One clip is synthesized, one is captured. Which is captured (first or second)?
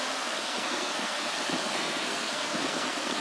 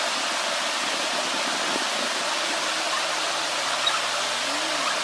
second